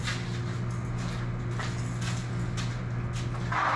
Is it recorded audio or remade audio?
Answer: recorded